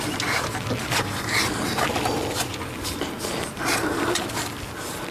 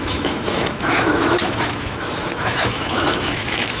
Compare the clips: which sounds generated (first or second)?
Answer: second